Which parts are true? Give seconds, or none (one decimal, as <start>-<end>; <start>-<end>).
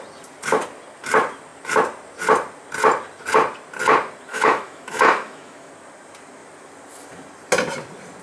0.0-4.3; 5.7-8.2